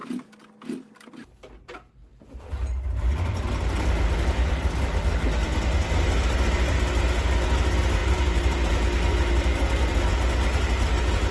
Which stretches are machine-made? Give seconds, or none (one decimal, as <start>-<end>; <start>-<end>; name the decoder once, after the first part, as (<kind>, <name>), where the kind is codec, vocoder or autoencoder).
8.0-8.7 (vocoder, BigVGAN v2)